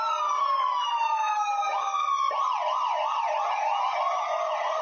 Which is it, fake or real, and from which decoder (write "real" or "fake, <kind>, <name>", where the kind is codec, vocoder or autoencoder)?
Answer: real